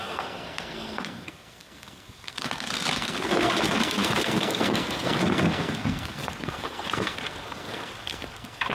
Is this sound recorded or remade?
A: remade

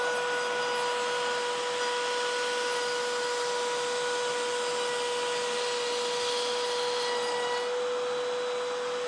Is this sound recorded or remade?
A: recorded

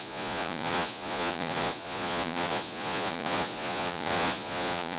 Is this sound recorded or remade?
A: remade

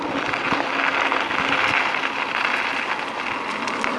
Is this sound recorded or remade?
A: recorded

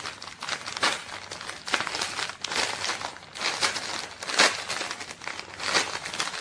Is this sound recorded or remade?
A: recorded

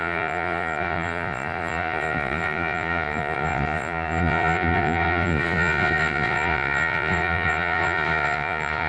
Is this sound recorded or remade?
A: remade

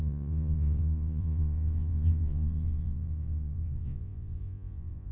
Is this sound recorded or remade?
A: remade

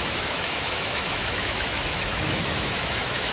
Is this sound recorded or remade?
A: remade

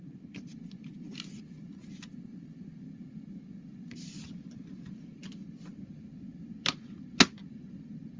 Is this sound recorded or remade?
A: recorded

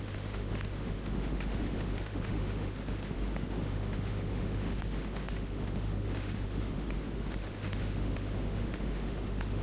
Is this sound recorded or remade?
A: remade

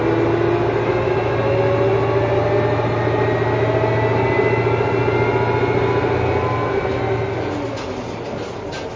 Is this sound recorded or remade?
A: recorded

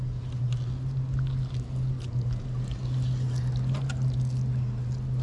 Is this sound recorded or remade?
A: recorded